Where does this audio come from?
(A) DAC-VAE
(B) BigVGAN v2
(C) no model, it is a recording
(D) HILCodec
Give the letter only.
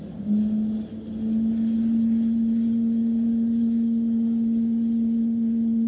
C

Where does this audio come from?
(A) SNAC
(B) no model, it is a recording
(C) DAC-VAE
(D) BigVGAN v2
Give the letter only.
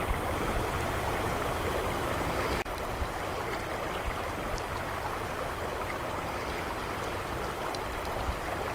B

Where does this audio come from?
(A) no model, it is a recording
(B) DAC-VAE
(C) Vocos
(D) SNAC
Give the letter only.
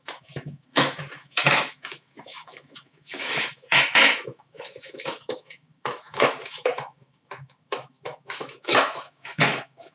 B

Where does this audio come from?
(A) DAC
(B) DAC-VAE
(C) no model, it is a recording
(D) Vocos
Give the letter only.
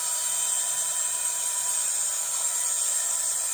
C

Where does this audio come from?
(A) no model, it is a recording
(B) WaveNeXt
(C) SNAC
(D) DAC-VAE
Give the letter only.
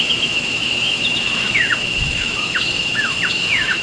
D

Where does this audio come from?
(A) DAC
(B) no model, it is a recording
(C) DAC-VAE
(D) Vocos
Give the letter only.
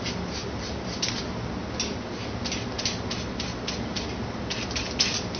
B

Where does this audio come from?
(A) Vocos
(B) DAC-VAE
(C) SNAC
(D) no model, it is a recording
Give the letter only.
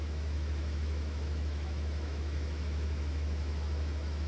B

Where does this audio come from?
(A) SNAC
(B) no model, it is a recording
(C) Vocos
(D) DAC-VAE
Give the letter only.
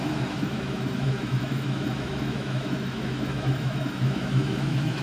D